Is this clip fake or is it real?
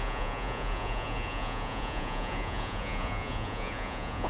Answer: fake